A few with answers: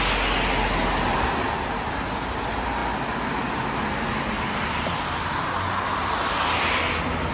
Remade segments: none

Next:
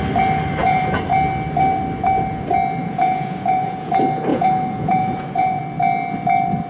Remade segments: 0.6-1.1 (vocoder, Vocos); 2.8-3.9; 4.3-5.6

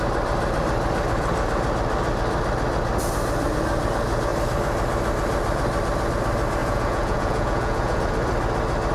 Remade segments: 6.6-8.0 (vocoder, Vocos)

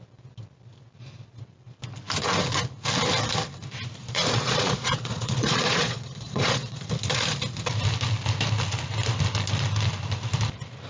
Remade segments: 4.0-6.8 (vocoder, Vocos)

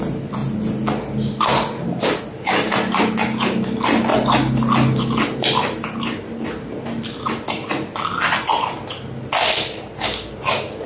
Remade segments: none

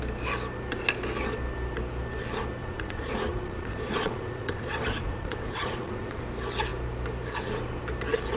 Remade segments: 2.6-6.2 (vocoder, Vocos)

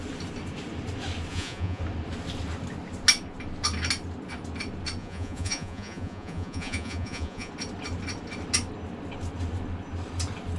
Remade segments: 1.3-1.8 (vocoder, Vocos); 5.0-7.5